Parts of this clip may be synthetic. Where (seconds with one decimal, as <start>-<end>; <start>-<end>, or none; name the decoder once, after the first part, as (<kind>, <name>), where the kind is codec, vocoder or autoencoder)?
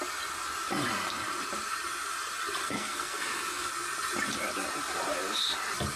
2.6-3.7 (codec, SNAC)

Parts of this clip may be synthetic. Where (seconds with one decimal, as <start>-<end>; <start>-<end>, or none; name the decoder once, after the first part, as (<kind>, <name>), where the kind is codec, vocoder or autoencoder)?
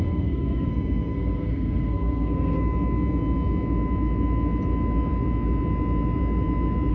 0.0-2.6 (codec, SNAC)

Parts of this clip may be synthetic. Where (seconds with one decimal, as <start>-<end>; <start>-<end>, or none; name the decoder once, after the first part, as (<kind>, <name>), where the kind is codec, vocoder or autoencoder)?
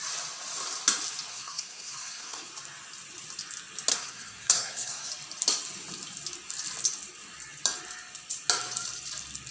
1.3-2.5 (codec, SNAC); 3.9-5.1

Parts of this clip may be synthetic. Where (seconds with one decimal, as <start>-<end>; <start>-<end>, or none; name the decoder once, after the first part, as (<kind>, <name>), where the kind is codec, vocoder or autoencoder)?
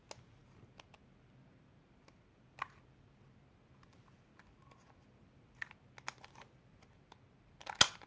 none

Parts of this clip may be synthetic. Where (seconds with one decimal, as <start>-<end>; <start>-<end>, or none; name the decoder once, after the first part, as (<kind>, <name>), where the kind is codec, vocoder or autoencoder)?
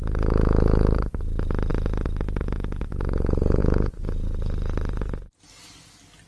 none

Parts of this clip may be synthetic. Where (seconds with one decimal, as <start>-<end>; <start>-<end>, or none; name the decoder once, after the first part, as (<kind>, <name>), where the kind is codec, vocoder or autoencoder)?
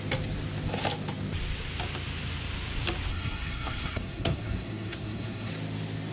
3.1-5.5 (codec, SNAC)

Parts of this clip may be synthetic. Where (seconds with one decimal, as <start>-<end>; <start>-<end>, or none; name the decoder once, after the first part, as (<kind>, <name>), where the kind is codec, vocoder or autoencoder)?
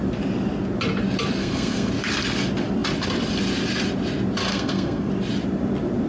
1.4-1.9 (codec, SNAC); 4.5-5.1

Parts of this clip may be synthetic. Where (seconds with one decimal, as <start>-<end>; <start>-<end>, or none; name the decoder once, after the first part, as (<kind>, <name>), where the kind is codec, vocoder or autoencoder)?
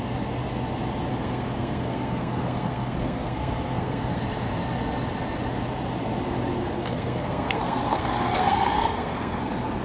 1.1-4.2 (codec, SNAC); 6.6-9.4